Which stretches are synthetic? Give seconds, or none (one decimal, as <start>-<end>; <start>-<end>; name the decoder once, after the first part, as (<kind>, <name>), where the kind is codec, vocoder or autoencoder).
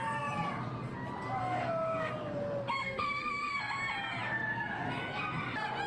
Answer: 1.4-2.1 (codec, SNAC); 2.8-3.6